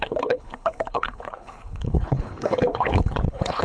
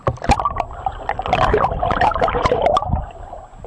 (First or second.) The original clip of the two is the second